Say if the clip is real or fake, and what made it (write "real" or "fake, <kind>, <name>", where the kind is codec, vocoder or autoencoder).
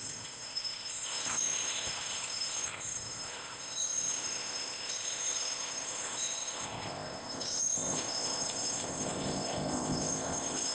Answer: fake, codec, ZipCodec